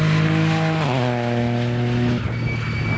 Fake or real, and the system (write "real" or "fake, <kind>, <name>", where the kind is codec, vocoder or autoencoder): real